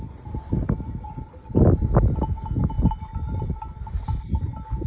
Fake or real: real